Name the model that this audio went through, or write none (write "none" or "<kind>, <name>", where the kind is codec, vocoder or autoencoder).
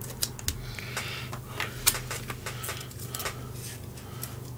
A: none